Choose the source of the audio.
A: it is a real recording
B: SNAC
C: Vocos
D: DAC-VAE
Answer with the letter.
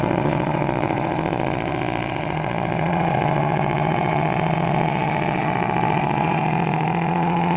C